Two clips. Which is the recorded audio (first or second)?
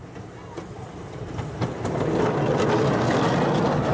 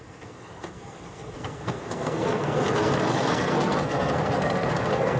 first